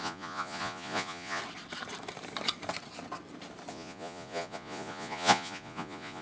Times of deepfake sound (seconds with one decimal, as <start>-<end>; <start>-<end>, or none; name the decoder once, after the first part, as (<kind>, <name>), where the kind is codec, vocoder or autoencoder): 0.0-1.4 (vocoder, Vocos); 3.7-6.2